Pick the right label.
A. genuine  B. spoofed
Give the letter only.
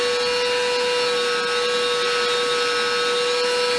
A